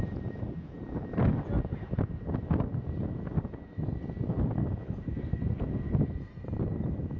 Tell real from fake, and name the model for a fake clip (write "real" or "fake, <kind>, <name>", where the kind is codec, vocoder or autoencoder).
real